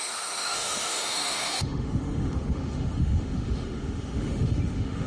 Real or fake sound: fake